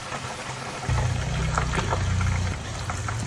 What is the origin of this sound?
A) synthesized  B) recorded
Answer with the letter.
B